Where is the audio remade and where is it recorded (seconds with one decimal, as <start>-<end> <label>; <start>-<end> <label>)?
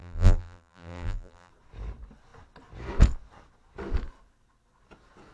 0.0-1.5 remade; 1.5-5.3 recorded